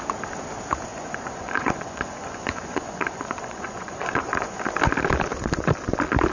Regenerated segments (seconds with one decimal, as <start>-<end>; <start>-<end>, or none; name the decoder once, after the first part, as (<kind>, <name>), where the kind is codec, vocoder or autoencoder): 0.9-4.7 (vocoder, Vocos)